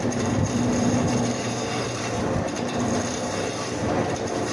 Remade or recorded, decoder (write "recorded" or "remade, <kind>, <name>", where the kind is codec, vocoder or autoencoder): remade, vocoder, BigVGAN v2